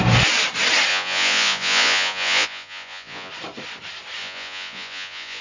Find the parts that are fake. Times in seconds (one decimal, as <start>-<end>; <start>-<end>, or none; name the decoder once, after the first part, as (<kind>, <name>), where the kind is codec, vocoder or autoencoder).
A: 0.9-3.3 (vocoder, Vocos); 4.2-5.4